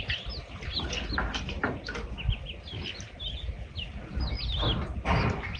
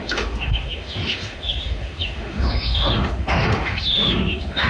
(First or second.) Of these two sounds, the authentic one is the first